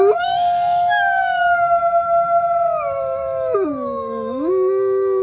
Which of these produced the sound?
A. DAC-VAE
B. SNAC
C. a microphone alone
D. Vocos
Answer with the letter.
A